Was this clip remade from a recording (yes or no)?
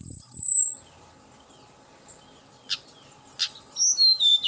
no